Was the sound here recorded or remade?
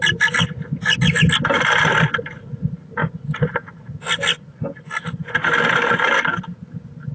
recorded